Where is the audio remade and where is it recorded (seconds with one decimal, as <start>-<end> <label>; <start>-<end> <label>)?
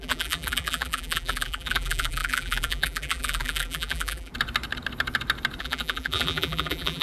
0.0-4.3 remade; 4.3-5.6 recorded; 5.6-7.0 remade